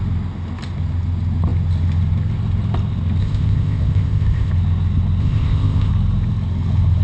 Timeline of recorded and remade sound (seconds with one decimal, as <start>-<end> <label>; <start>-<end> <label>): 0.0-3.2 recorded; 3.2-4.5 remade; 4.5-5.2 recorded; 5.2-5.9 remade; 5.9-7.0 recorded